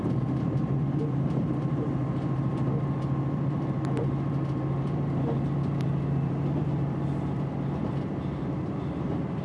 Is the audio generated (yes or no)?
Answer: yes